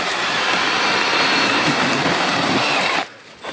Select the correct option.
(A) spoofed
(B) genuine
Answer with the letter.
B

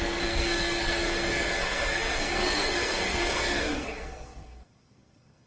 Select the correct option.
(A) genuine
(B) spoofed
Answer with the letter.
B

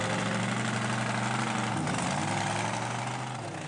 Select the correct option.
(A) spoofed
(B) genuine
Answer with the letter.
B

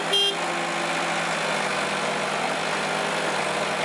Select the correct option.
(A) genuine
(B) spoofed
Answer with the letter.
A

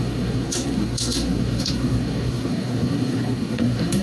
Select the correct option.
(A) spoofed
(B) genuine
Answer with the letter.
A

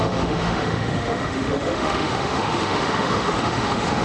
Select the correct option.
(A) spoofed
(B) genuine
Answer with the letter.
A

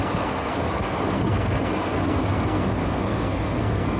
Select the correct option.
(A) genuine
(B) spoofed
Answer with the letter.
B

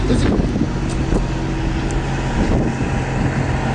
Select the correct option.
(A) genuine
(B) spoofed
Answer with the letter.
A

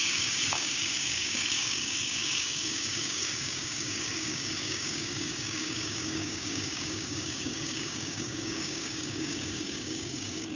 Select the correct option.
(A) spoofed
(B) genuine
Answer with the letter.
A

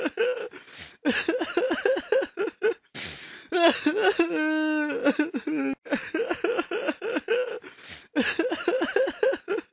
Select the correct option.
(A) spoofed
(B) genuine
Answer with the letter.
B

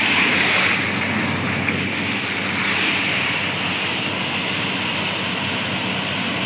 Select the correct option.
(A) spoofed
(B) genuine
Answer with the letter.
B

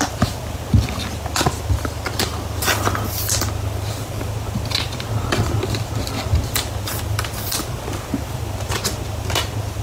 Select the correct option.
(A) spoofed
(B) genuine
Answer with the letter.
B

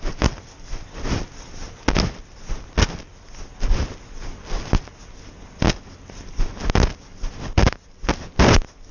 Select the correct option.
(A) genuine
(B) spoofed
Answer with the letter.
A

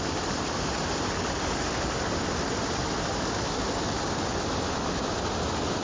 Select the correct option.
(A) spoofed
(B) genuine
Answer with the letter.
B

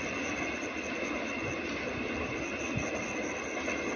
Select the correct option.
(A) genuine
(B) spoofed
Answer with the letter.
A